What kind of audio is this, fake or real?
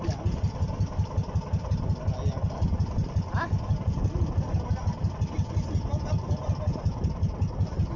real